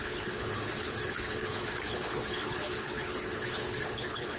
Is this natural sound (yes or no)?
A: no